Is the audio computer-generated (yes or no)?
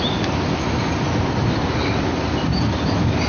no